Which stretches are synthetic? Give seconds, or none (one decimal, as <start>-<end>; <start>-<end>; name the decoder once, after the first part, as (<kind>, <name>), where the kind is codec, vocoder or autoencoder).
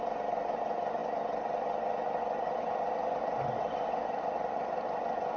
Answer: none